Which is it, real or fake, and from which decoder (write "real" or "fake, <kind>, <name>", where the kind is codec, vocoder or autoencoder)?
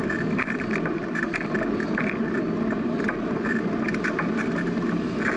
real